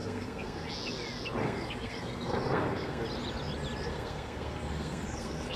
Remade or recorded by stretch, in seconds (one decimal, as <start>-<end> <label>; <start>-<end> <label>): 0.0-0.7 remade; 0.7-1.4 recorded; 1.4-3.0 remade; 3.0-3.9 recorded; 3.9-5.6 remade